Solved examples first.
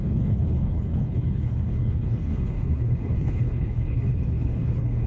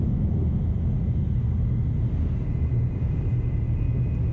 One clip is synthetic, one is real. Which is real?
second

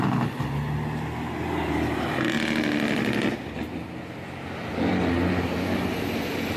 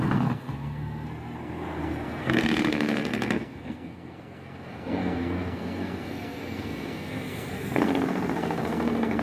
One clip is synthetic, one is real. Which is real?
first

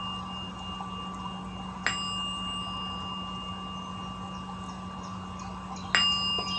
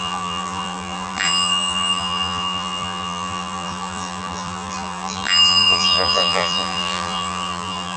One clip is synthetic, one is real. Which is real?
first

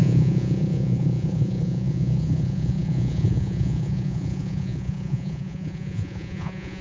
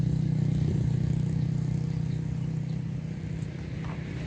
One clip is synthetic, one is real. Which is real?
second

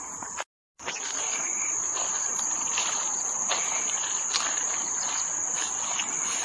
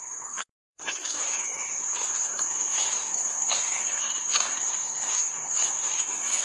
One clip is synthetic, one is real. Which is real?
first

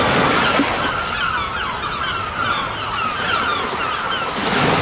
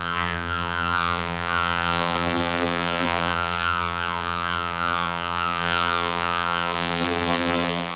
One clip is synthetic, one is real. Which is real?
first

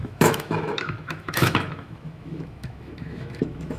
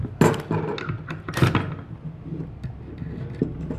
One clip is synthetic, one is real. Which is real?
second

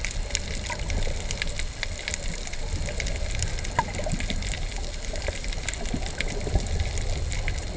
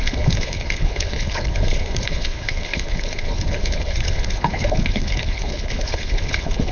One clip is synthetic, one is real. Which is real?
first